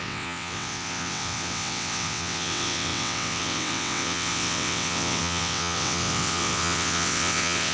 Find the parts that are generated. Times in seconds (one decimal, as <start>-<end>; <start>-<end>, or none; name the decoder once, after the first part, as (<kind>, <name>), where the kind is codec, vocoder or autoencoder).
0.0-7.7 (vocoder, WaveNeXt)